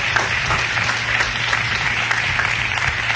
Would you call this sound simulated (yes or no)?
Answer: no